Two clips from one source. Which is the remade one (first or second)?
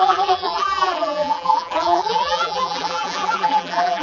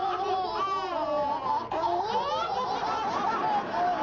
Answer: first